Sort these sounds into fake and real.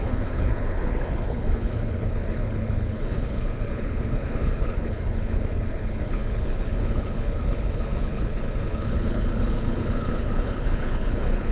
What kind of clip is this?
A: fake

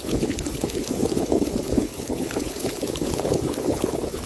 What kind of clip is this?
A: fake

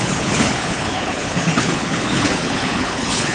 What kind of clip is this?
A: fake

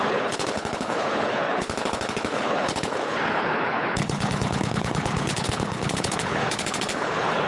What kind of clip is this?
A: fake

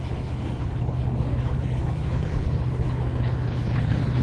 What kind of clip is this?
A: fake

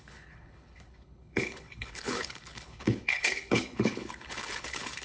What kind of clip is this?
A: fake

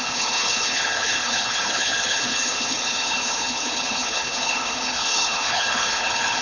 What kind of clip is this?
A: fake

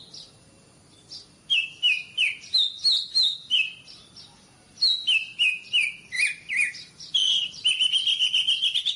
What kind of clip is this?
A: real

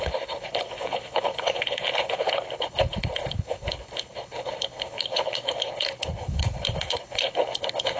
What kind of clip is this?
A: fake